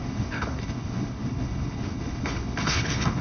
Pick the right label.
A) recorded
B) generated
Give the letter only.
B